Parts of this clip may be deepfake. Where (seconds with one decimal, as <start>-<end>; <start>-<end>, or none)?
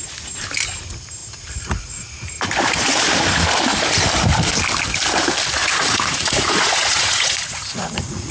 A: 1.2-2.3; 5.6-8.3